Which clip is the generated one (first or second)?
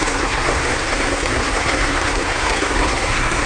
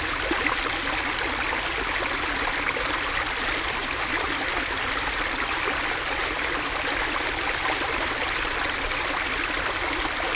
first